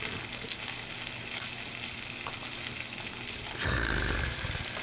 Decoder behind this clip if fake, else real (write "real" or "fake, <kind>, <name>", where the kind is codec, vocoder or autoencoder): real